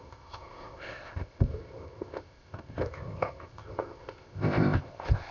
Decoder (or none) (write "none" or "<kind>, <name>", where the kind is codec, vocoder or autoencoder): codec, ZipCodec